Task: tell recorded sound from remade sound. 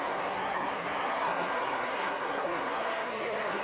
remade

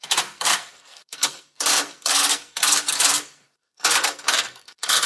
remade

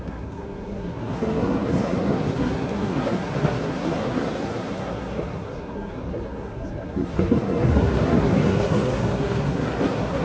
remade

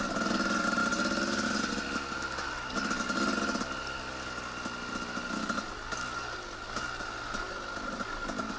recorded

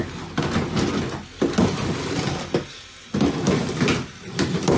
recorded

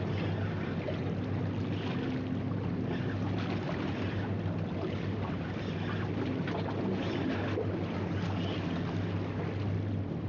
recorded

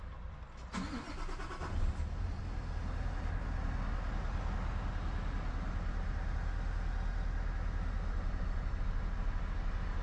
recorded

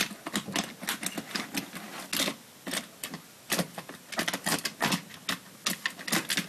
recorded